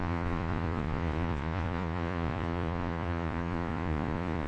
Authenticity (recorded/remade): remade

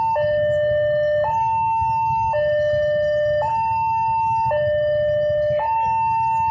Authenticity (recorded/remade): recorded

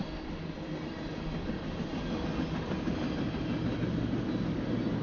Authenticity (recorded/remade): recorded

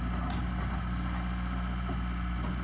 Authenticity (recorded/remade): recorded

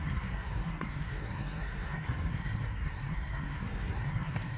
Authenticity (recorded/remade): remade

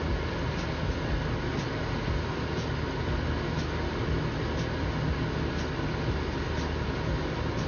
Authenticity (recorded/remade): recorded